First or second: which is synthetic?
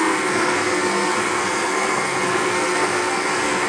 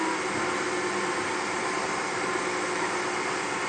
first